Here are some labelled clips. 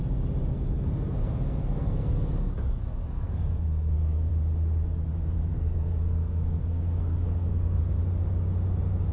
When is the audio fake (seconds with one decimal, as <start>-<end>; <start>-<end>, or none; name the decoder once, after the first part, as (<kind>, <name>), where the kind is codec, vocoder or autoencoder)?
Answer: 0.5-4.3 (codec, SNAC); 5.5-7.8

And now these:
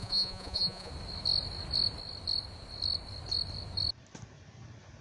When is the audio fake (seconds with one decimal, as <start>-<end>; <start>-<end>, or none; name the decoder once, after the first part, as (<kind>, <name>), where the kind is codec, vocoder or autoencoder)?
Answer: 0.0-0.9 (vocoder, Vocos)

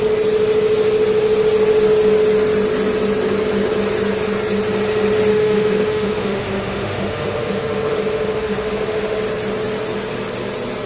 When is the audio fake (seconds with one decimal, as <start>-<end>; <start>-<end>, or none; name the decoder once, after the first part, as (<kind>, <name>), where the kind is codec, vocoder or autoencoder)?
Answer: 5.3-9.2 (autoencoder, DAC-VAE)